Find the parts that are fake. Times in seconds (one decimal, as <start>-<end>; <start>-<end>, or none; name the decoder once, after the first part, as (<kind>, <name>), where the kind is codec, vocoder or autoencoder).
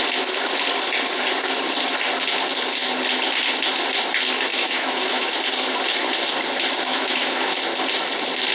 4.5-5.3 (autoencoder, DAC-VAE); 6.9-7.5